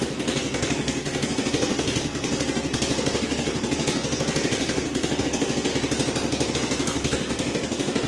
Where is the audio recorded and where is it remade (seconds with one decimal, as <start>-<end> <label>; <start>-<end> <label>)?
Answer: 0.0-5.7 remade; 5.7-6.5 recorded; 6.5-8.1 remade